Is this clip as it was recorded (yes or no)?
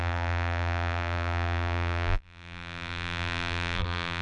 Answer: no